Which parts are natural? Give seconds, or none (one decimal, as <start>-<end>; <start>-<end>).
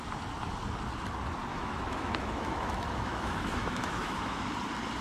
0.0-1.5; 4.5-5.0